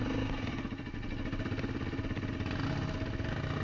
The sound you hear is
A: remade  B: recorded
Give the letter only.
B